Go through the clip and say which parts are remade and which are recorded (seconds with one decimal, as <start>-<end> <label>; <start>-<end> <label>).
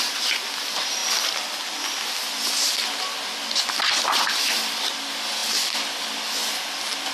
0.0-7.1 recorded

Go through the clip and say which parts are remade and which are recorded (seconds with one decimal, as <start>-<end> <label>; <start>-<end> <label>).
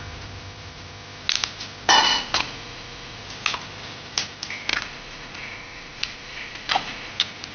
0.0-2.0 recorded; 2.0-3.2 remade; 3.2-4.7 recorded; 4.7-7.1 remade; 7.1-7.5 recorded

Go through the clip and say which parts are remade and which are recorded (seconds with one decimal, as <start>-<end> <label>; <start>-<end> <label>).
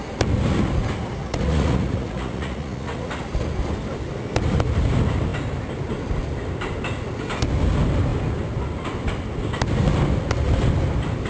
0.0-1.2 recorded; 1.2-3.2 remade; 3.2-11.3 recorded